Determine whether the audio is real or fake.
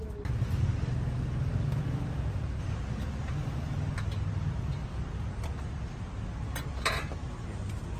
real